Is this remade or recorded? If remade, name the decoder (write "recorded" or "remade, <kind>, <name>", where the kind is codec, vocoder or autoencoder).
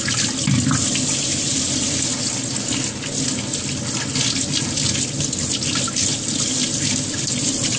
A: recorded